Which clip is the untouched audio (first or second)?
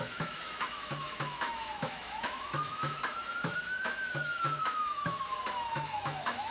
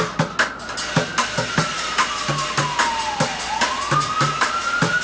second